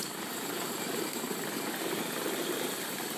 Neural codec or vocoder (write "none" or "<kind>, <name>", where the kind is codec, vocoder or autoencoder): vocoder, BigVGAN v2